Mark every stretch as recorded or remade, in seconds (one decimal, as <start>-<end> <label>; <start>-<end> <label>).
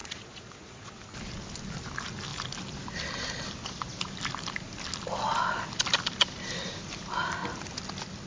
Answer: 0.0-0.9 remade; 0.9-8.3 recorded